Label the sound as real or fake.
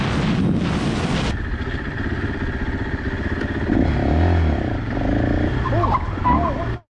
real